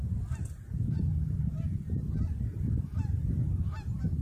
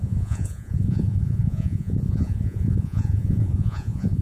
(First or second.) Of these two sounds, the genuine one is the first